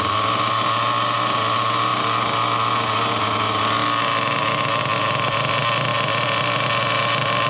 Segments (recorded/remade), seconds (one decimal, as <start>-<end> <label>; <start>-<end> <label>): 0.0-7.5 recorded